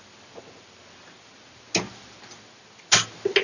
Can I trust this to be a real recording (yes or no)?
yes